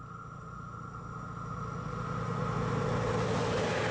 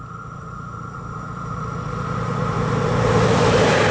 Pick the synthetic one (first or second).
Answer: second